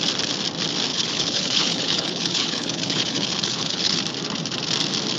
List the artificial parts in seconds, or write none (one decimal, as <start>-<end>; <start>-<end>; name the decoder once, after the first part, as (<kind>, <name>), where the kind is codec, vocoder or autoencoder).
0.9-4.0 (codec, HILCodec)

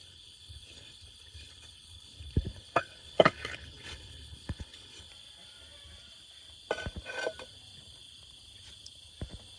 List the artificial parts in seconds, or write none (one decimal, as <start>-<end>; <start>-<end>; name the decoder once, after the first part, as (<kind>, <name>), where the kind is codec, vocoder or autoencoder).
0.0-5.1 (codec, HILCodec)

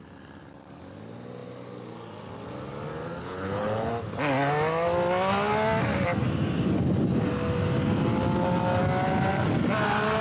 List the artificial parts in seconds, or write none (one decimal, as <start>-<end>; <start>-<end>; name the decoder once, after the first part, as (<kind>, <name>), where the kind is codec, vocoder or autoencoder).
3.2-3.9 (codec, HILCodec)

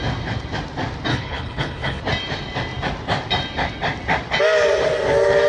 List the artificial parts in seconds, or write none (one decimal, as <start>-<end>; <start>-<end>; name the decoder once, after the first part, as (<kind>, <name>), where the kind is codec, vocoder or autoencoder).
1.1-2.0 (codec, HILCodec)

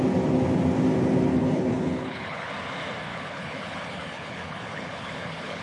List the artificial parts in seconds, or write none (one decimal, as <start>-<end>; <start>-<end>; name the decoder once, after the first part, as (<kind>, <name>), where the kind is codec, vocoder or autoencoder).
1.3-2.5 (codec, HILCodec); 3.1-5.6

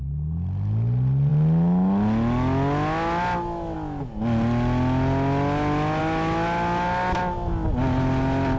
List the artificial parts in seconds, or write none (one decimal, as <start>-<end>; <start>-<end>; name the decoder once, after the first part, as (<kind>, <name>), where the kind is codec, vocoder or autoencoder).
none